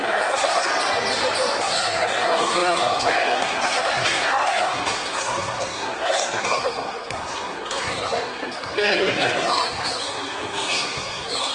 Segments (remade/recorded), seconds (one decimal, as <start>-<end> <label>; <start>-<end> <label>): 0.0-0.7 remade; 0.7-1.6 recorded; 1.6-11.5 remade